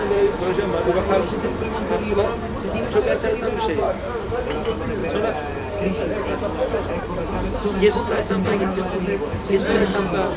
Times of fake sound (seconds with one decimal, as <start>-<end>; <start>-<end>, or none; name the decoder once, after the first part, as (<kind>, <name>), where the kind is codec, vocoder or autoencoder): none